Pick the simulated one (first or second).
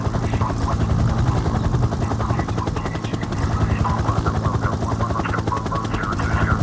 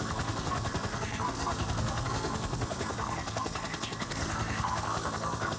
second